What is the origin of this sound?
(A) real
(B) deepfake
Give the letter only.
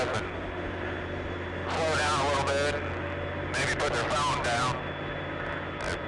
A